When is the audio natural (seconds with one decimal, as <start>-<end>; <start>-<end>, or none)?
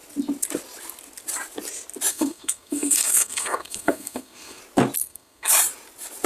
0.0-2.1; 4.6-5.0; 5.5-6.3